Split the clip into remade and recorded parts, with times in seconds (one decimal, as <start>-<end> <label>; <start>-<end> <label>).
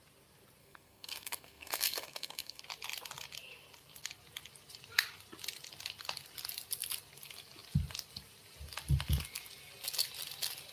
0.0-0.6 recorded; 0.6-2.6 remade; 2.6-10.7 recorded